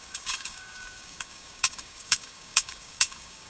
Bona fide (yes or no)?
no